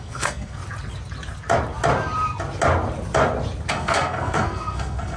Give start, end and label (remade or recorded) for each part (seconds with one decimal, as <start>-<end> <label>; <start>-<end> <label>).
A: 0.0-0.6 remade; 0.6-3.7 recorded; 3.7-5.2 remade